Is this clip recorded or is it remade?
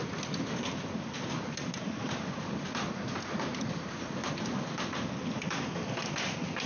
recorded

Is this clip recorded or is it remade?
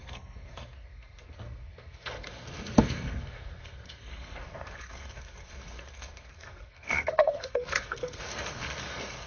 remade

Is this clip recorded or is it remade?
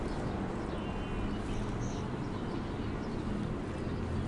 recorded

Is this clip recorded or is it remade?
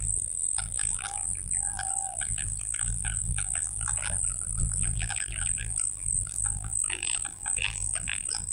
remade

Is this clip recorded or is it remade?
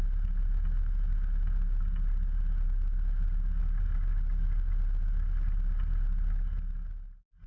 recorded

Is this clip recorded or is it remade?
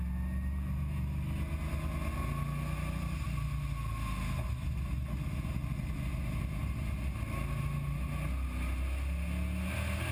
recorded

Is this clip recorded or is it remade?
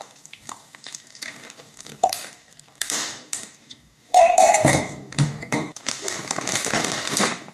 remade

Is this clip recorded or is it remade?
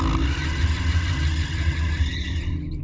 recorded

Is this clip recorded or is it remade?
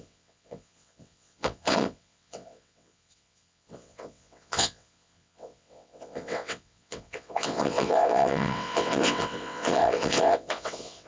remade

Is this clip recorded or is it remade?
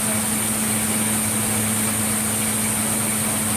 recorded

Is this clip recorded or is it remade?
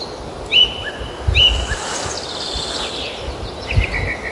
recorded